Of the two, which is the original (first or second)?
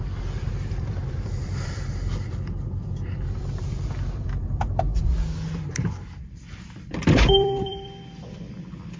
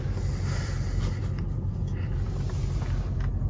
second